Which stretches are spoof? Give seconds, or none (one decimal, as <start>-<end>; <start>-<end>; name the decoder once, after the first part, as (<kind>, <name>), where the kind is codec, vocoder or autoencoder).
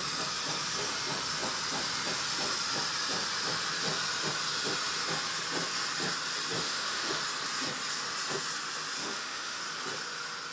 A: 6.6-7.2 (autoencoder, DAC-VAE); 9.0-9.6